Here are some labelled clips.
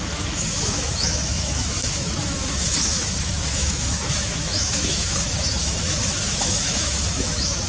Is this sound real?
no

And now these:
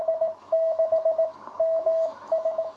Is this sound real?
no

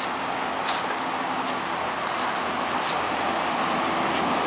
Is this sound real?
yes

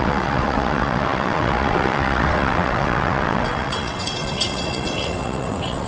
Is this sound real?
no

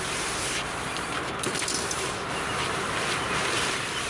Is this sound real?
yes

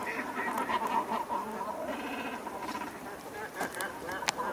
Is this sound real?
yes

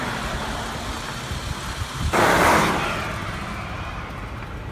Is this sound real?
yes